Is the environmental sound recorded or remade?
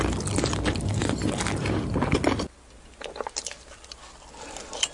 recorded